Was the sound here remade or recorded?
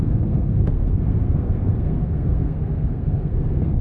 remade